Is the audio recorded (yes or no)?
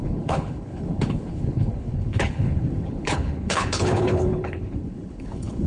no